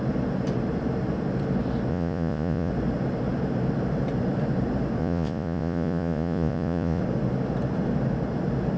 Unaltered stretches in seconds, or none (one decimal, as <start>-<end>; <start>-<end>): 0.0-1.9; 2.7-5.0; 7.0-8.8